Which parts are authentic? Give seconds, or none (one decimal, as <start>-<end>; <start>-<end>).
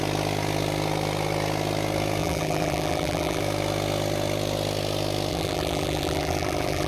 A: 0.0-2.2; 3.4-5.3